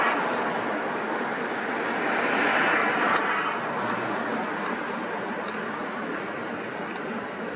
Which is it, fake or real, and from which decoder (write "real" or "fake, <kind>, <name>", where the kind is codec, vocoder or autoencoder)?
real